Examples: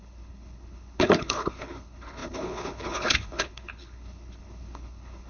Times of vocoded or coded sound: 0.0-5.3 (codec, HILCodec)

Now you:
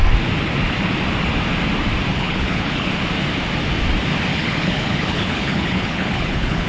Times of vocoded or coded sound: 2.1-2.9 (codec, HILCodec); 4.3-6.7

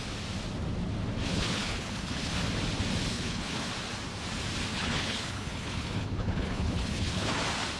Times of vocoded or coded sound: 1.3-2.3 (codec, HILCodec); 3.1-3.7; 4.7-7.3

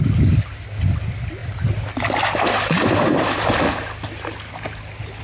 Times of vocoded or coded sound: none

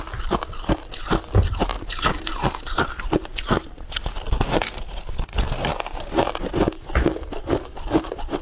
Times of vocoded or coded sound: none

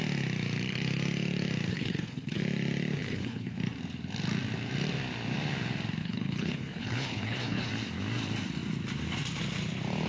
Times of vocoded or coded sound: 1.7-2.4 (codec, HILCodec); 3.0-3.6; 6.0-7.7

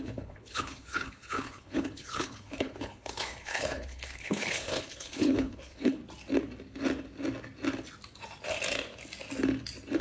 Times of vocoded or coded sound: 0.0-6.0 (codec, HILCodec)